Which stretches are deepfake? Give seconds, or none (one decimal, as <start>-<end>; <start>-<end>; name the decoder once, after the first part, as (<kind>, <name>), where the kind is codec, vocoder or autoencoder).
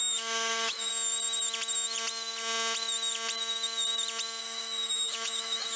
0.0-0.9 (autoencoder, DAC-VAE); 4.4-5.8